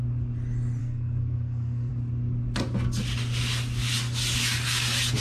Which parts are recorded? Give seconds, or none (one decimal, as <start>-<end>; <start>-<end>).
0.0-0.8; 1.9-5.2